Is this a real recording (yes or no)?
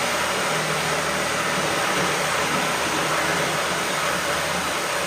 yes